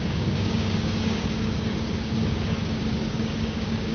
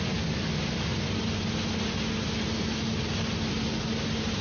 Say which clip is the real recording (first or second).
second